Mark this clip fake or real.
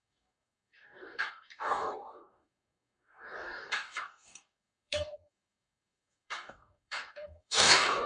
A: fake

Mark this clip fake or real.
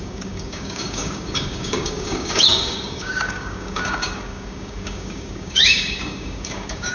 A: fake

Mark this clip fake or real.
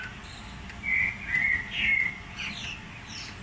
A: real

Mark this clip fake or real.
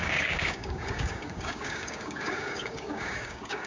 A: fake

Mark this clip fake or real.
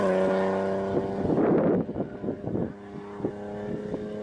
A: real